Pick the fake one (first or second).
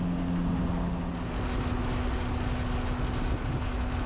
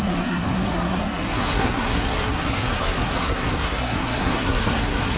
second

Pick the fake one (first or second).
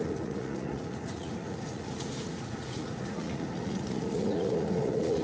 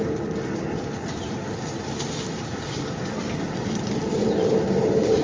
first